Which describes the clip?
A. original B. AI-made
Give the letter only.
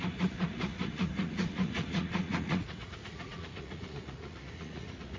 B